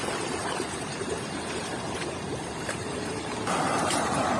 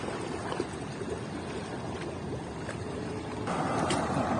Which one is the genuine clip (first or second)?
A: second